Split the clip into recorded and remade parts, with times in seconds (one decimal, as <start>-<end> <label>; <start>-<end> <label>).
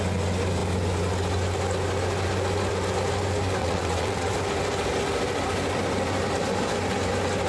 0.0-3.6 recorded; 3.6-4.3 remade; 4.3-7.5 recorded